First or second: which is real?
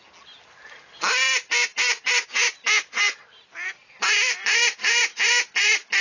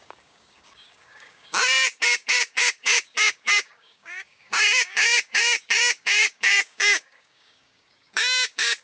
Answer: first